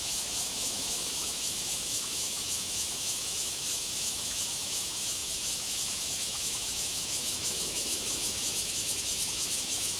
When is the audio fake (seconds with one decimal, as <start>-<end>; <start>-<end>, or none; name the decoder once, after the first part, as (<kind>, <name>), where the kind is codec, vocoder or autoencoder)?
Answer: 0.0-10.0 (autoencoder, DAC-VAE)